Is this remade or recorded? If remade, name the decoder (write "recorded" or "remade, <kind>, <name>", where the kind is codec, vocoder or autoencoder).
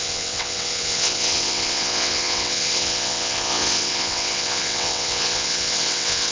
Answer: remade, vocoder, WaveNeXt